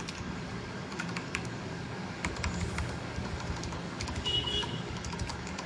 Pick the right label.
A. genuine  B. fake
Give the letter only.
B